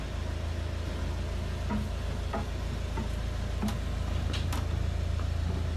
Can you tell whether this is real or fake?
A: real